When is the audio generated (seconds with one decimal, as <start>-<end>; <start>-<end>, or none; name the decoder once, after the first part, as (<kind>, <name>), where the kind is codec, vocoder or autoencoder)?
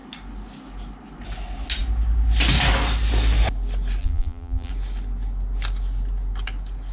4.0-4.7 (vocoder, BigVGAN v2)